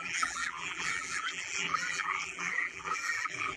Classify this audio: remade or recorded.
remade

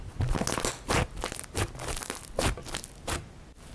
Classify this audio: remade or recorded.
recorded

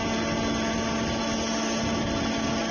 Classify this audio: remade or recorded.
recorded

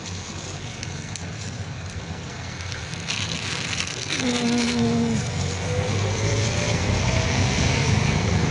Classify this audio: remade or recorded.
remade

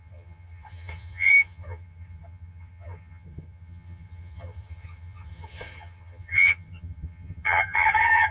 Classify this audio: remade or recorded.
remade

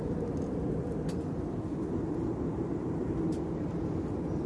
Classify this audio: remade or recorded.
recorded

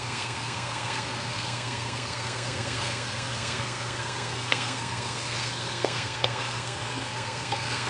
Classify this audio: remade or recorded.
remade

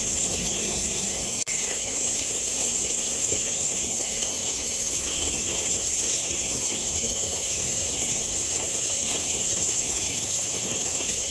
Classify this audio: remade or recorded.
remade